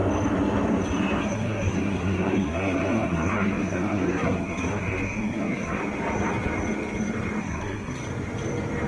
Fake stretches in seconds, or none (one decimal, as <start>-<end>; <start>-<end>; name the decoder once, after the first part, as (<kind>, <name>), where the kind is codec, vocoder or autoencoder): 1.2-5.8 (codec, SNAC); 7.4-8.0